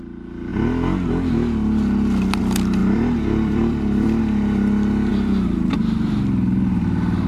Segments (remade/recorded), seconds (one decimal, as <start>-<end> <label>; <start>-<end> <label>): 0.0-2.8 recorded; 2.8-4.2 remade; 4.2-5.1 recorded; 5.1-6.2 remade; 6.2-7.3 recorded